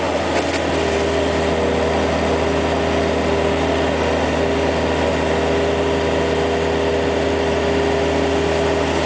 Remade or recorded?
recorded